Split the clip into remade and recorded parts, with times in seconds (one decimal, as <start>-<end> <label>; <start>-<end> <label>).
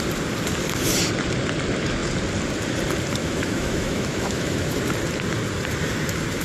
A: 0.0-3.2 recorded; 3.2-4.8 remade; 4.8-6.4 recorded